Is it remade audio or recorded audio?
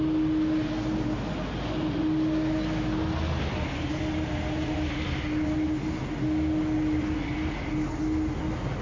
recorded